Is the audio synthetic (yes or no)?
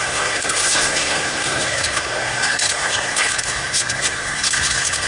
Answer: yes